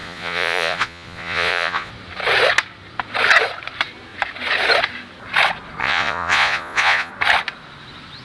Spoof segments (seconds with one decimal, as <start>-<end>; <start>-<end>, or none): 0.0-1.9; 5.8-7.1